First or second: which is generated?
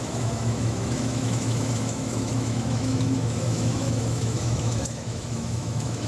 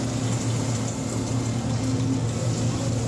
first